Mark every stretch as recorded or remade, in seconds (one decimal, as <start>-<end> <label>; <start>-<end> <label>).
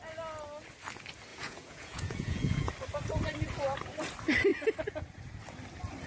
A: 0.0-1.3 recorded; 1.3-2.7 remade; 2.7-6.1 recorded